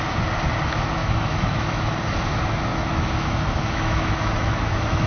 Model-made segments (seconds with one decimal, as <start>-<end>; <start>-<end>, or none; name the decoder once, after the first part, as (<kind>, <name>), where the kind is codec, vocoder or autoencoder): 1.0-1.8 (autoencoder, DAC-VAE); 2.7-5.1